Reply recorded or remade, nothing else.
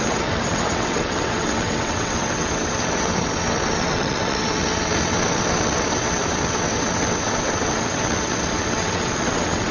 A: remade